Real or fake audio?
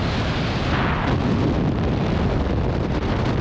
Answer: real